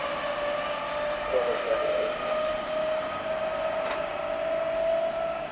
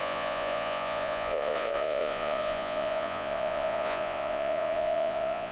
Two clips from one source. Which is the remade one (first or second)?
second